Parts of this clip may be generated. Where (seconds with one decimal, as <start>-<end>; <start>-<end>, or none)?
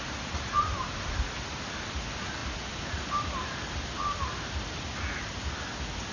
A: none